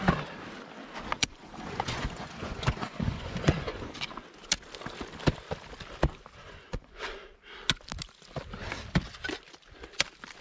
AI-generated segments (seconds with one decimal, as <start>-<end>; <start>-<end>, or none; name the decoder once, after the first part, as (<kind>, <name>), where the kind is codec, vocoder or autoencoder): 1.2-3.9 (vocoder, Vocos); 6.4-7.0